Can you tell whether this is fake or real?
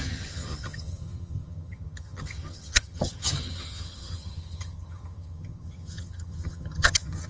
fake